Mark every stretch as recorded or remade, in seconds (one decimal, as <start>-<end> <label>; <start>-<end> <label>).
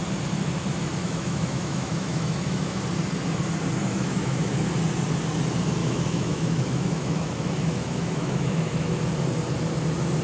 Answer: 0.0-1.0 recorded; 1.0-2.8 remade; 2.8-3.8 recorded; 3.8-4.7 remade; 4.7-5.8 recorded; 5.8-9.0 remade; 9.0-10.2 recorded